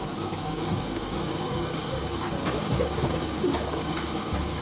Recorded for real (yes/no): no